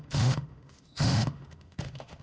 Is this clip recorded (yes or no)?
no